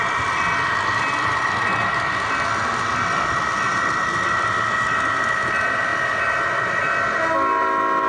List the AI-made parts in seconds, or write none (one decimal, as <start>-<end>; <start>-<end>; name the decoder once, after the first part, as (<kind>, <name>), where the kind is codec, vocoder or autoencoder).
none